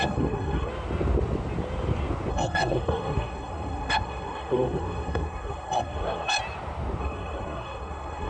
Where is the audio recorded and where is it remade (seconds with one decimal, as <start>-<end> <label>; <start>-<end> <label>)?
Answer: 0.0-0.7 remade; 0.7-2.3 recorded; 2.3-6.4 remade; 6.4-7.0 recorded; 7.0-8.3 remade